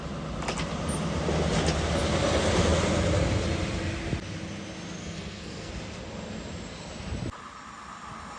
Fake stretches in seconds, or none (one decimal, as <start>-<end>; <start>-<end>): 5.0-5.7